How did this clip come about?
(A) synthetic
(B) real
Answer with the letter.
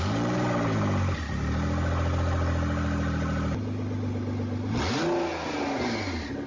B